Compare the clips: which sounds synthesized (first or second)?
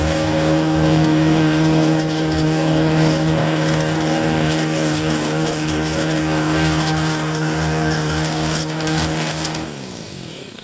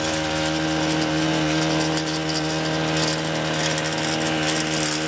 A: first